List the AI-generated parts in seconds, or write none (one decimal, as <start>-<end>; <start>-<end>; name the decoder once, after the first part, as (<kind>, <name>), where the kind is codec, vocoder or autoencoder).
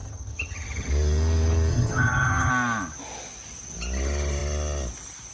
0.0-0.9 (vocoder, HiFi-GAN); 1.7-2.5